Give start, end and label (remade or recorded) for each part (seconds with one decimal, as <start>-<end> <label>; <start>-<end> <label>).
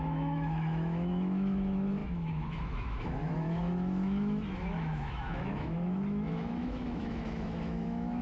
0.0-8.2 remade